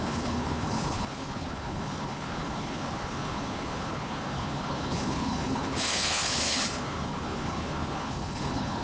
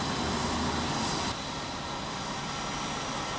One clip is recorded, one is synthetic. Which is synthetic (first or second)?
first